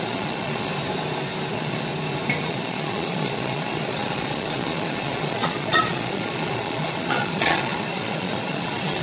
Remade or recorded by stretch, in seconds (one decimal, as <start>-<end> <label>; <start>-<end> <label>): 0.0-0.7 remade; 0.7-1.5 recorded; 1.5-1.9 remade; 1.9-2.4 recorded; 2.4-9.0 remade